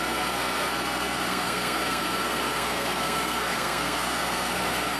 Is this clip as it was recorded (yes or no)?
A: no